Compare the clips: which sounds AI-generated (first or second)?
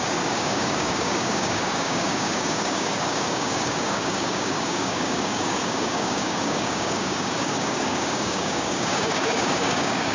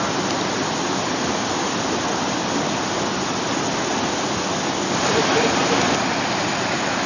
first